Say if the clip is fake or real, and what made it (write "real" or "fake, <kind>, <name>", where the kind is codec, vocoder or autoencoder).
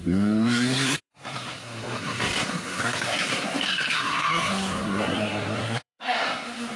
fake, codec, SNAC